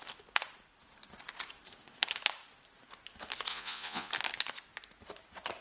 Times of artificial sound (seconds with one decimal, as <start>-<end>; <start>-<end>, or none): 3.5-4.1